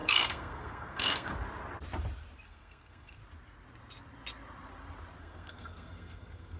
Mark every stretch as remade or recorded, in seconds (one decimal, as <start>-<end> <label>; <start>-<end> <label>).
0.0-1.3 remade; 1.3-2.4 recorded; 2.4-3.2 remade; 3.2-5.2 recorded; 5.2-6.6 remade